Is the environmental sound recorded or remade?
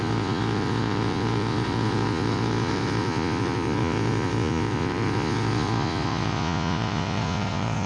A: remade